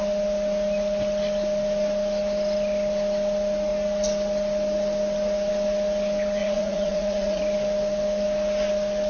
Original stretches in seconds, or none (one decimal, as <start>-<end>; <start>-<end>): 0.0-6.4; 7.4-9.1